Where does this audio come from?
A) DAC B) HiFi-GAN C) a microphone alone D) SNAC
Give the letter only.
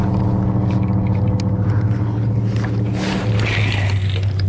C